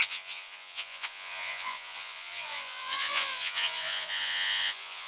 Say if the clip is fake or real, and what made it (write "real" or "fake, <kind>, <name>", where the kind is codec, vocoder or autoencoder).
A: fake, vocoder, Vocos